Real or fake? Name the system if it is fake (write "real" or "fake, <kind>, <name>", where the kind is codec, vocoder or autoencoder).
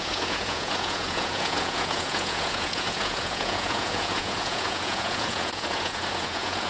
fake, vocoder, Vocos